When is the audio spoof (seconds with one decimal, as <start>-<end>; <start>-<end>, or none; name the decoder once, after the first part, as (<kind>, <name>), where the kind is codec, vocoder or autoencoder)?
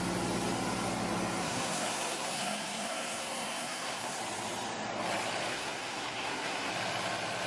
1.4-4.2 (codec, SNAC); 5.5-6.7